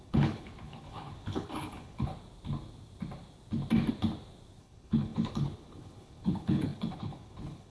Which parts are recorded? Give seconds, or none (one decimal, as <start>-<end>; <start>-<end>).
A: 2.1-4.6